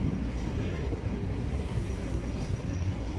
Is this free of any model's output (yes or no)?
no